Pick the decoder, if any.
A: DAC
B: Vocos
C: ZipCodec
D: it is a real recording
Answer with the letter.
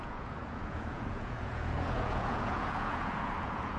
B